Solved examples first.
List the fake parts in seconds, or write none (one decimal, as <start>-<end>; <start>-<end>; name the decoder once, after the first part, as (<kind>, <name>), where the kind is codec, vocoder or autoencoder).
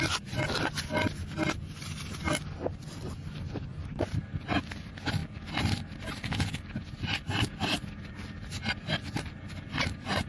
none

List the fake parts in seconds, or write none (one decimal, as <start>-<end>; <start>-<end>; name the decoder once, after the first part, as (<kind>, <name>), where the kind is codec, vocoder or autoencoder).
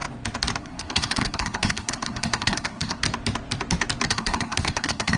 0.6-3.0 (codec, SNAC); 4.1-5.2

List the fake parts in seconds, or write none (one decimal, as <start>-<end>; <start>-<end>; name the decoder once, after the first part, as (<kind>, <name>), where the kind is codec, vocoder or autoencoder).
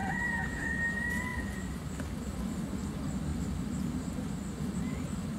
0.0-0.8 (vocoder, Vocos)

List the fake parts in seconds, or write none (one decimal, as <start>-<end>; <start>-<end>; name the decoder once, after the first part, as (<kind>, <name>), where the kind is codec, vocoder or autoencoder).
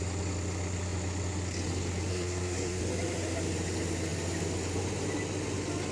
2.1-2.8 (codec, SNAC)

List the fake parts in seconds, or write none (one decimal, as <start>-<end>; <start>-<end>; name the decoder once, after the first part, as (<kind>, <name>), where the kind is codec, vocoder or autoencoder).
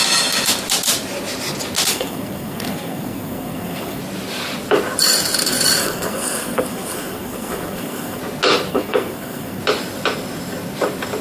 1.9-4.0 (codec, SNAC); 5.8-8.2; 8.7-9.6